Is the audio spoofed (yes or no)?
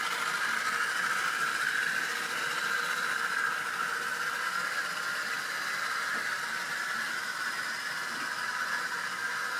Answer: no